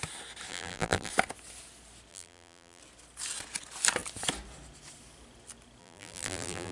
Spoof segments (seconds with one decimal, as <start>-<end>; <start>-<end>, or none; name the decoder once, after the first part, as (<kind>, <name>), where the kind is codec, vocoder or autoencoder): 0.5-1.1 (vocoder, BigVGAN v2); 2.1-2.8; 5.8-6.7

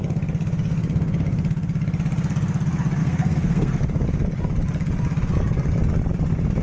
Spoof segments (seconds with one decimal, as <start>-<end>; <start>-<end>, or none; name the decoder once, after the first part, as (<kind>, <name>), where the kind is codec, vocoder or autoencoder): 3.0-3.8 (codec, SNAC)